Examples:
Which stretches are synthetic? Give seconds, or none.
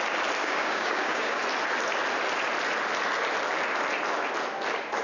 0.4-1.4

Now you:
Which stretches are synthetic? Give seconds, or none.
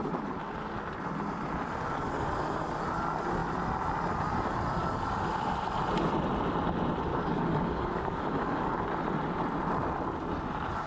7.1-8.8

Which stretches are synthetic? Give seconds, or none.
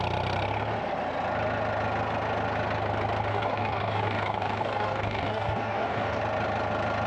3.3-6.2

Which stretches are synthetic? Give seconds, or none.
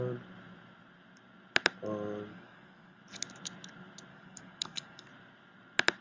2.3-3.0; 4.1-5.1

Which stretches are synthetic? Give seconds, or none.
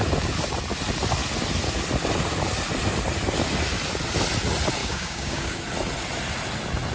4.8-5.6